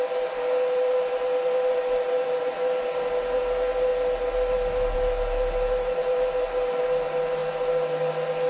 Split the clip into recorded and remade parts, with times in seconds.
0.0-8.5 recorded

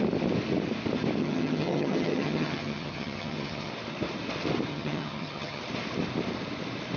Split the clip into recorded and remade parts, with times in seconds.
0.0-1.2 recorded; 1.2-3.7 remade; 3.7-4.7 recorded; 4.7-5.6 remade; 5.6-7.0 recorded